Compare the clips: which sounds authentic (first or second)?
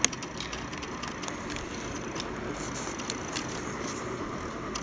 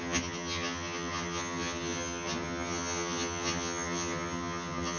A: first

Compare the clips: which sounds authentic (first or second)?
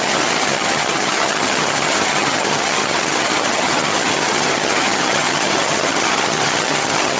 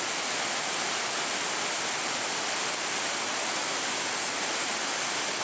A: second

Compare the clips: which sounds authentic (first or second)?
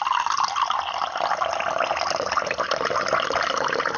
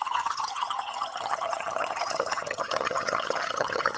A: first